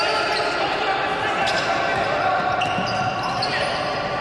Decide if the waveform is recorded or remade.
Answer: recorded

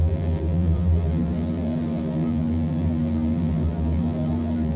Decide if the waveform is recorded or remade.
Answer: remade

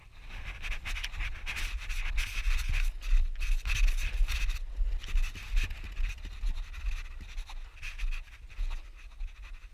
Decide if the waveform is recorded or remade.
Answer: recorded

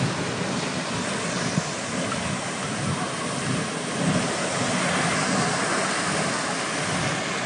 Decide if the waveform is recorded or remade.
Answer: recorded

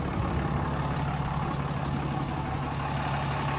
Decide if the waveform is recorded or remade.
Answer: recorded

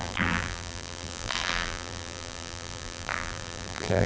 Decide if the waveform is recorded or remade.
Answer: remade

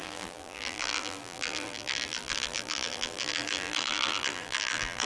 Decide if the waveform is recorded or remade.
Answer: remade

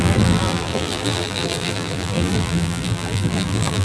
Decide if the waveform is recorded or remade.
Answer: remade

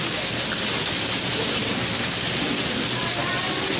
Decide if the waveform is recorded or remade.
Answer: recorded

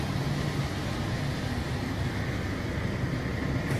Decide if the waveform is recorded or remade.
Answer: recorded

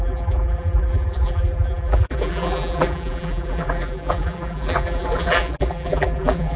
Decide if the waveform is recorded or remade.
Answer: remade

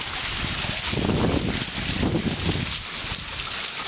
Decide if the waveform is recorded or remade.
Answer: recorded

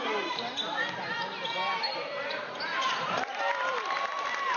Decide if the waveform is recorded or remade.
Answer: remade